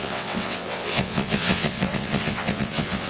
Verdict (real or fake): fake